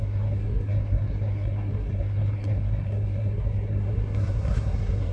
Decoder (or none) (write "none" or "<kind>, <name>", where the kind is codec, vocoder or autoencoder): codec, SNAC